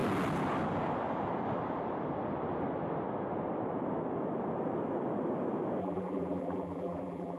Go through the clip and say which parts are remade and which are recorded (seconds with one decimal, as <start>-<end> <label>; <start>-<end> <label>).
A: 0.0-5.8 recorded; 5.8-7.4 remade